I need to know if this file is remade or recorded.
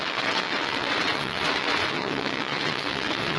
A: remade